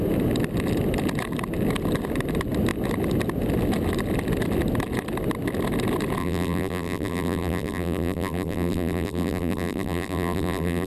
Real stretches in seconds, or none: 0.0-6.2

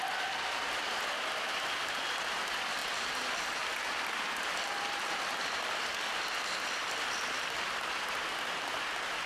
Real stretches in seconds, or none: 0.0-9.3

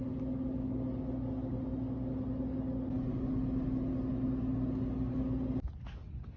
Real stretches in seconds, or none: 0.0-6.4

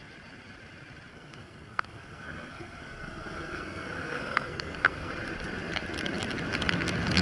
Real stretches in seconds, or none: 0.0-1.1; 5.1-7.2

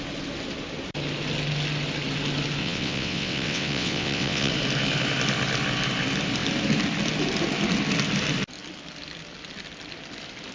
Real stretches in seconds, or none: 0.0-2.6; 4.5-10.5

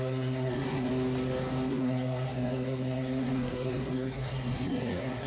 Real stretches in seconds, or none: 0.9-1.7

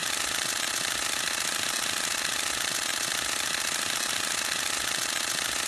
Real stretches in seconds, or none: 0.0-5.7

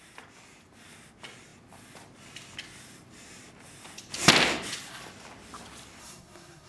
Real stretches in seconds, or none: 0.0-6.0